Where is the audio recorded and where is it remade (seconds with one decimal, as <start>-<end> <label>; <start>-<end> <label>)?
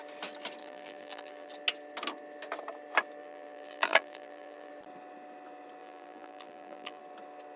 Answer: 0.0-0.6 recorded; 0.6-1.5 remade; 1.5-3.2 recorded; 3.2-4.7 remade; 4.7-5.8 recorded; 5.8-7.0 remade; 7.0-7.6 recorded